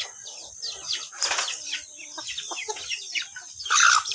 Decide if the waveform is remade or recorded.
recorded